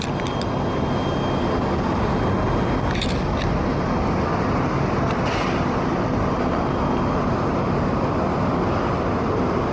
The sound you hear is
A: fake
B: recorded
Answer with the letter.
B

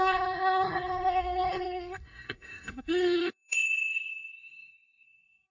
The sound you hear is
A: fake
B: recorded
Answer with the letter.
A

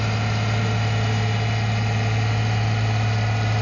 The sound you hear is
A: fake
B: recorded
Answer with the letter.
B